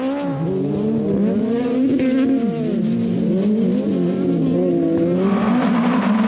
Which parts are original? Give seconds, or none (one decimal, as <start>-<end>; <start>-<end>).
0.0-6.3